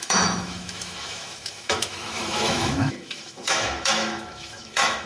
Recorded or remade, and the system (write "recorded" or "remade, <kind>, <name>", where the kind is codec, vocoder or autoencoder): remade, autoencoder, DAC-VAE